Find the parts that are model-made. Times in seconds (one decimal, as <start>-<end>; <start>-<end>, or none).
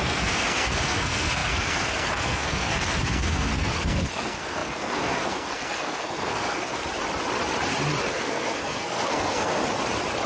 0.0-6.8; 8.1-9.6